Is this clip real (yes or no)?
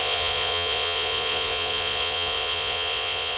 no